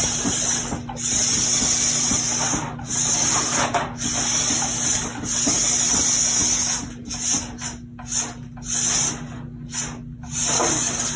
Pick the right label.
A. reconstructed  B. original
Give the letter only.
B